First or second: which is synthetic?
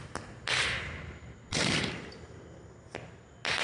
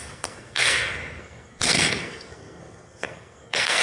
second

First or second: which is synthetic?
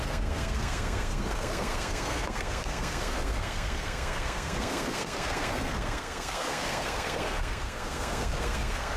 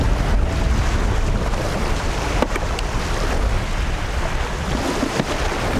first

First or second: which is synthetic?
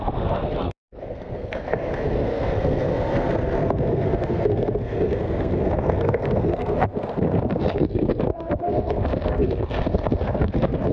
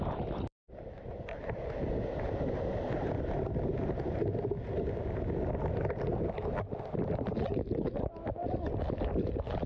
first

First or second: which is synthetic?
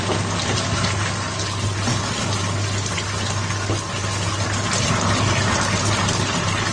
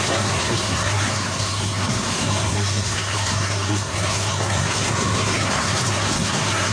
second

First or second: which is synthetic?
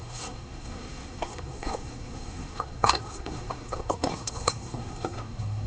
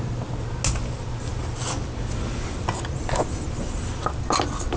first